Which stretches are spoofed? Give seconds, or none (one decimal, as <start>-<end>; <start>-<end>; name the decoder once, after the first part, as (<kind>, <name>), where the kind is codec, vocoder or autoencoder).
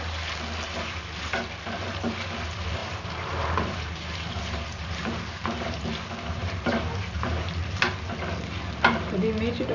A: 2.8-5.8 (vocoder, BigVGAN v2); 6.4-7.8